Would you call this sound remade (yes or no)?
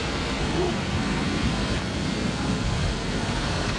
yes